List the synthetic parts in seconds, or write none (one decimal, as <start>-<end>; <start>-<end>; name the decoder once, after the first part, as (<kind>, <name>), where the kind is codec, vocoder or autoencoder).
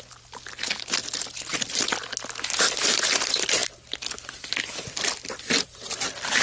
none